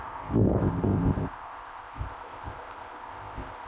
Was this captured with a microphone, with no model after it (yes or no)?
no